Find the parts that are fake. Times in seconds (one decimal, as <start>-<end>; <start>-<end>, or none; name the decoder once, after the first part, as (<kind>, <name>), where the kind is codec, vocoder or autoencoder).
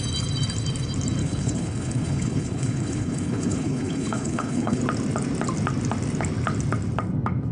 1.2-4.8 (codec, HILCodec)